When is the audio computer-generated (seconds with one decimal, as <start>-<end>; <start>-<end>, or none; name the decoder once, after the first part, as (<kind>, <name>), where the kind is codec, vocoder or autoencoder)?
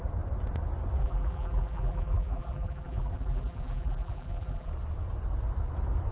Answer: 1.0-4.7 (vocoder, BigVGAN v2)